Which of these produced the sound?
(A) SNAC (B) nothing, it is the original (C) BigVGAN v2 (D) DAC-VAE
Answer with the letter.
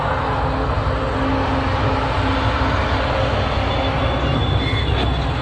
B